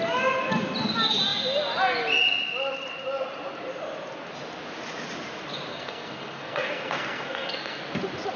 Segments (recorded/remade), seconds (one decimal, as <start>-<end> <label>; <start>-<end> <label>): 0.0-5.7 recorded; 5.7-7.8 remade; 7.8-8.4 recorded